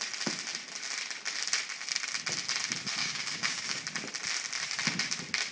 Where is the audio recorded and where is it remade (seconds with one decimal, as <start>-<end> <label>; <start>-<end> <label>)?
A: 0.0-3.0 recorded; 3.0-3.8 remade; 3.8-5.5 recorded